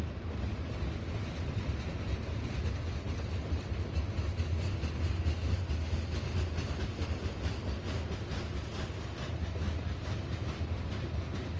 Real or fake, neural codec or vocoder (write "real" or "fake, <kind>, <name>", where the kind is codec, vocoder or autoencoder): real